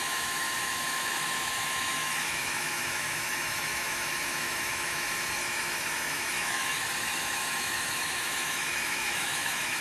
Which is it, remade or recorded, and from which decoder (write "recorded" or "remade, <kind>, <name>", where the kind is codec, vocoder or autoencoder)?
remade, autoencoder, DAC-VAE